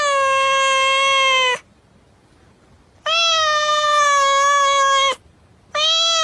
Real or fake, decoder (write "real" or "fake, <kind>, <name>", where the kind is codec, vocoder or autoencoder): real